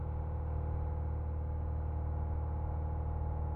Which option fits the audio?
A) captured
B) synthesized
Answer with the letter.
A